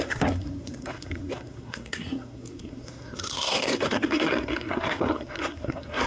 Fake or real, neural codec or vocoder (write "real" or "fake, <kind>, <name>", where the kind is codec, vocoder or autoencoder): fake, codec, SNAC